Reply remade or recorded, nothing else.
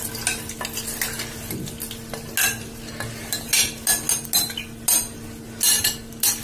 recorded